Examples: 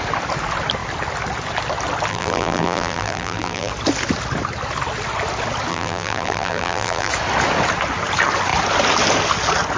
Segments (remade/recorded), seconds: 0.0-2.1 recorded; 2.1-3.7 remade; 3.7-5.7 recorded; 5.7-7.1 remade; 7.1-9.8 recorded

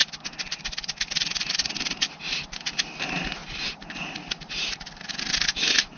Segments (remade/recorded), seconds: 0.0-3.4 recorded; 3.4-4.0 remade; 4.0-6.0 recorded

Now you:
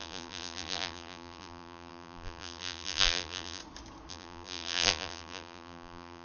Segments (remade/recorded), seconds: 0.0-3.6 remade; 3.6-4.1 recorded; 4.1-6.2 remade

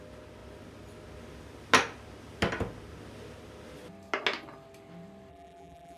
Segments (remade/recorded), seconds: 0.0-5.3 recorded; 5.3-6.0 remade

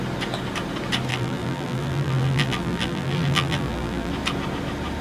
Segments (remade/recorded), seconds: 0.0-1.1 recorded; 1.1-4.1 remade; 4.1-5.0 recorded

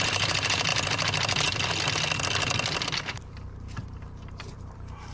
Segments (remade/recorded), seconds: 0.0-0.7 remade; 0.7-3.0 recorded; 3.0-5.1 remade

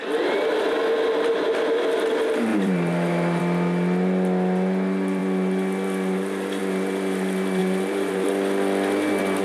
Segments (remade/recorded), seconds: 0.0-2.5 recorded; 2.5-3.4 remade; 3.4-7.6 recorded; 7.6-8.3 remade; 8.3-9.4 recorded

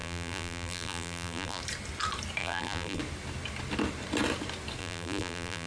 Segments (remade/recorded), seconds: 0.0-1.6 remade; 1.6-2.4 recorded; 2.4-3.0 remade; 3.0-4.8 recorded; 4.8-5.7 remade